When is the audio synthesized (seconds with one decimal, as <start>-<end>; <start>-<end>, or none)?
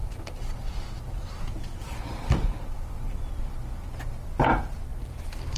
0.0-3.4